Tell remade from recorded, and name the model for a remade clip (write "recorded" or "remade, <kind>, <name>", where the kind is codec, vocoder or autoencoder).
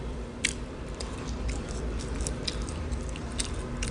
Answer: remade, vocoder, BigVGAN v2